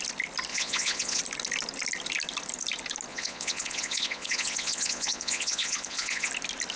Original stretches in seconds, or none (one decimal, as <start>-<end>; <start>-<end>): 0.0-0.5; 1.2-3.1; 6.3-6.8